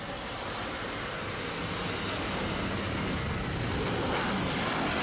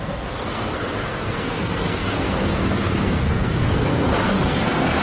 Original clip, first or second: first